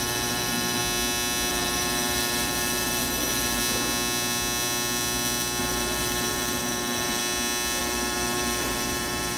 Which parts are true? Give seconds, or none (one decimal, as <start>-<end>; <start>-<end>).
0.8-1.5; 3.6-5.6; 7.2-7.8